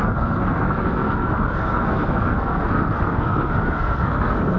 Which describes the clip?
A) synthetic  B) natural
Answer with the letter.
A